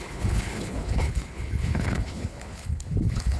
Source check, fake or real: fake